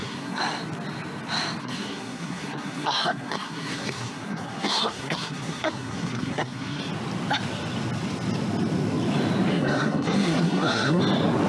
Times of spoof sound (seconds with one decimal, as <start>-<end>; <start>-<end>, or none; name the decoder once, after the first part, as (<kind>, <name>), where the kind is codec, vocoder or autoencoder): 0.0-0.6 (codec, SNAC); 1.6-6.8; 9.5-11.0

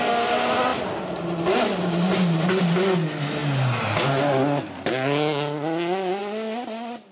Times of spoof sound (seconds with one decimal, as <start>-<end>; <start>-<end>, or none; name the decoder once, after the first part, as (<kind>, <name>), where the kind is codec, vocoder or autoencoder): none

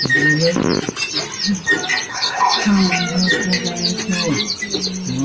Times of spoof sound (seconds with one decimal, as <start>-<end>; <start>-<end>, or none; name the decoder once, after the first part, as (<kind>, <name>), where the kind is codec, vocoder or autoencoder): 2.1-2.9 (codec, SNAC)

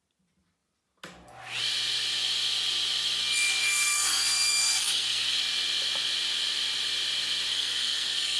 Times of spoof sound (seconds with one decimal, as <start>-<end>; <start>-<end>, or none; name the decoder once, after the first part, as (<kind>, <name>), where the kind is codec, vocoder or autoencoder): 3.6-5.4 (codec, SNAC); 7.5-8.4

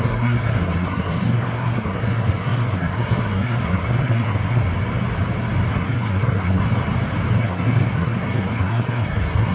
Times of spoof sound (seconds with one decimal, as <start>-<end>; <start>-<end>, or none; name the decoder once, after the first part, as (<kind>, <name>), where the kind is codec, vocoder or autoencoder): 0.0-4.7 (codec, SNAC); 5.7-6.6; 7.4-9.5